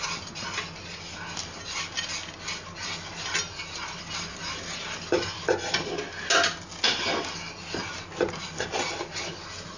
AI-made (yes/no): no